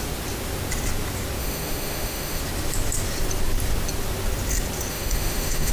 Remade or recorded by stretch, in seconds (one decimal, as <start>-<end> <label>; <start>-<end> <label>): 0.0-1.4 recorded; 1.4-2.4 remade; 2.4-4.9 recorded; 4.9-5.7 remade